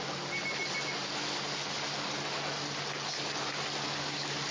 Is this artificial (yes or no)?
no